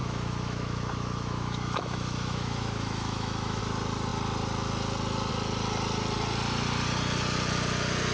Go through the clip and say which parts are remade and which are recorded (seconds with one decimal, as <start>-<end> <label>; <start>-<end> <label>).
0.0-3.6 remade; 3.6-8.1 recorded